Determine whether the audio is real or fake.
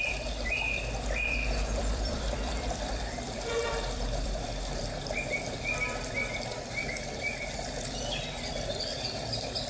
fake